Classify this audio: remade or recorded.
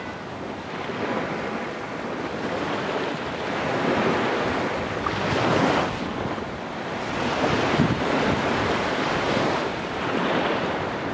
recorded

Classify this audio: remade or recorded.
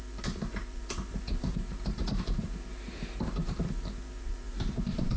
remade